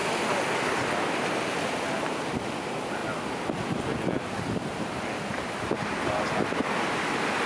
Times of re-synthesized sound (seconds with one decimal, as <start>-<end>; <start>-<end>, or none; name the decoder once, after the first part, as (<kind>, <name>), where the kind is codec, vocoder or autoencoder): none